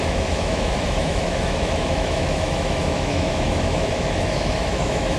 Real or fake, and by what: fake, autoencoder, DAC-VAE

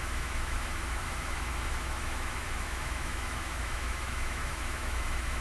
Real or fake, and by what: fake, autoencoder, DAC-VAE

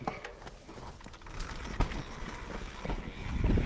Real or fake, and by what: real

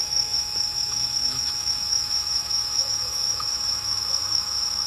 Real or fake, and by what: fake, autoencoder, DAC-VAE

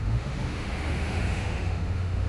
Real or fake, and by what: fake, autoencoder, DAC-VAE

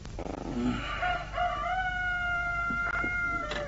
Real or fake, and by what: real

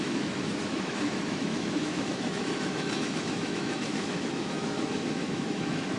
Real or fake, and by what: fake, autoencoder, DAC-VAE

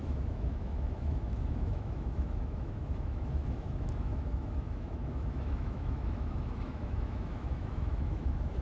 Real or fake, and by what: fake, autoencoder, DAC-VAE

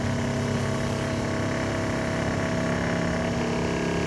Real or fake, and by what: real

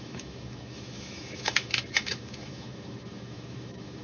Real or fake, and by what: fake, autoencoder, DAC-VAE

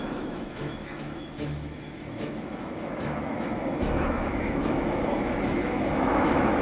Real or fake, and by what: fake, autoencoder, DAC-VAE